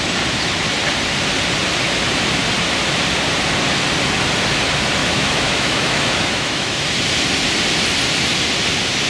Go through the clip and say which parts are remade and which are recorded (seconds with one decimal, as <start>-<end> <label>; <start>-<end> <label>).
0.0-5.0 recorded; 5.0-6.8 remade; 6.8-9.1 recorded